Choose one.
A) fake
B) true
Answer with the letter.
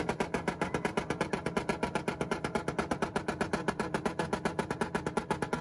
A